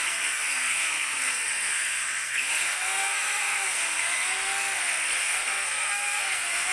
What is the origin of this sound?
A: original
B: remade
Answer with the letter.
B